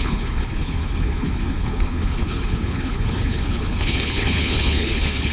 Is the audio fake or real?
fake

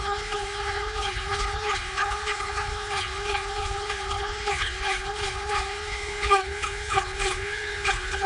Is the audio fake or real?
fake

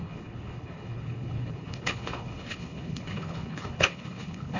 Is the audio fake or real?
fake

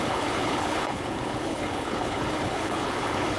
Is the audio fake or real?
fake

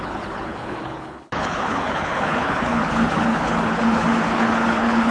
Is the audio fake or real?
fake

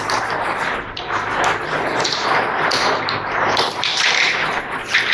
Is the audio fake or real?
real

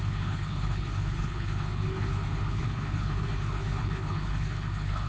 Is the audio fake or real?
fake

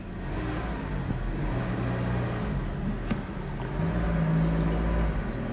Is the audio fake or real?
real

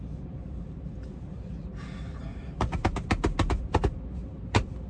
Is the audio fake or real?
real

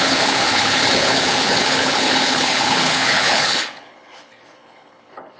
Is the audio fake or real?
fake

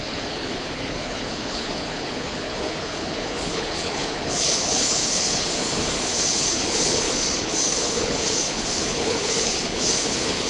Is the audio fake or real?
fake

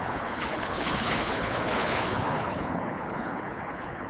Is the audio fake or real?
fake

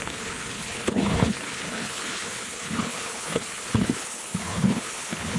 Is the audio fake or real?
fake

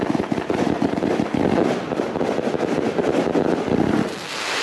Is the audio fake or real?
real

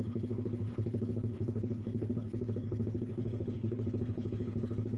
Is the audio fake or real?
fake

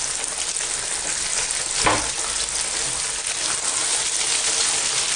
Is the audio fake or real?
real